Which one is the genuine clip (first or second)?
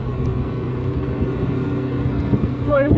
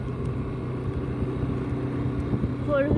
second